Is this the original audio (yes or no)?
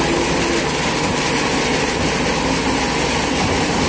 yes